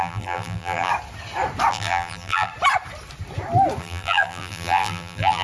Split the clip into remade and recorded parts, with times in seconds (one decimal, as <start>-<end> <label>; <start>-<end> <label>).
0.0-0.9 remade; 0.9-1.7 recorded; 1.7-2.5 remade; 2.5-3.8 recorded; 3.8-5.4 remade